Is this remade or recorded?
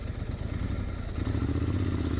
recorded